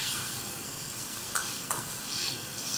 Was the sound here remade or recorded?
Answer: remade